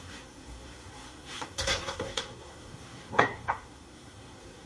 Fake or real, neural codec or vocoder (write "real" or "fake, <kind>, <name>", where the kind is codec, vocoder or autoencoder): fake, codec, SNAC